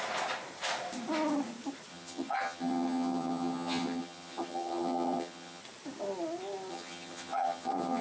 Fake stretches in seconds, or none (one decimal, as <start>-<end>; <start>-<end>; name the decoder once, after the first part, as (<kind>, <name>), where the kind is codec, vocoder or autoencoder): 1.9-5.6 (vocoder, HiFi-GAN); 6.7-8.0